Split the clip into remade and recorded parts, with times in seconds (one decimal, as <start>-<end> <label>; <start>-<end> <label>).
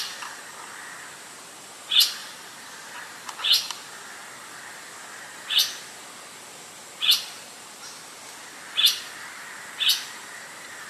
0.0-2.2 recorded; 2.2-3.3 remade; 3.3-10.9 recorded